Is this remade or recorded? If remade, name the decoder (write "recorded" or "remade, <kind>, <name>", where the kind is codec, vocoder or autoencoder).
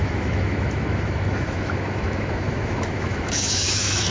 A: remade, autoencoder, DAC-VAE